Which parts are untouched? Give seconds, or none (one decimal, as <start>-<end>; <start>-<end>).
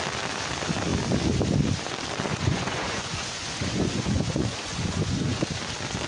0.0-2.3; 5.4-6.1